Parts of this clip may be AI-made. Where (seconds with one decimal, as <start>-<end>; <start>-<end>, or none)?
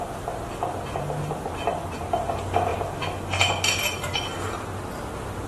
none